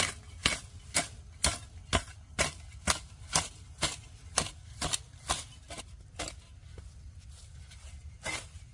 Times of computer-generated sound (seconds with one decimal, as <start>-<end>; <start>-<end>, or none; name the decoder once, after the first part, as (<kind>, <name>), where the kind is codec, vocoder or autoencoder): none